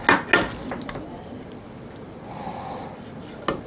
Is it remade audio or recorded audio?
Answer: recorded